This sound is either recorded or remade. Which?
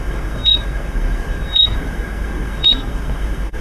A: remade